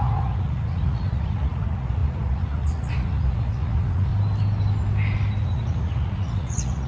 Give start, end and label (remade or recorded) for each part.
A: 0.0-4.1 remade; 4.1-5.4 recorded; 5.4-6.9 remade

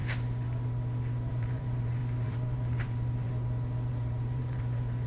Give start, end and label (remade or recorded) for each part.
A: 0.0-1.3 recorded; 1.3-3.3 remade; 3.3-3.9 recorded; 3.9-5.1 remade

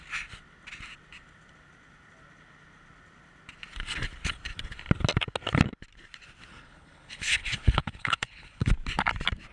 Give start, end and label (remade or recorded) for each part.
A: 0.0-6.5 recorded; 6.5-8.7 remade; 8.7-9.5 recorded

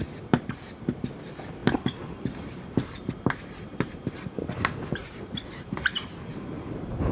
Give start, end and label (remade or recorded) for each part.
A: 0.0-1.6 recorded; 1.6-4.1 remade; 4.1-5.0 recorded; 5.0-6.3 remade; 6.3-7.1 recorded

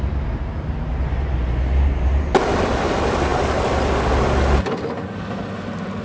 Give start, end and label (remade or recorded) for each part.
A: 0.0-6.0 recorded